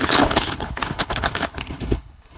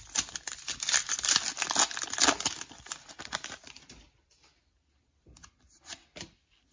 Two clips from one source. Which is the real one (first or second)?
second